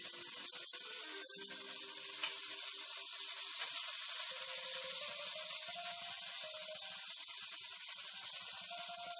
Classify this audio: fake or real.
real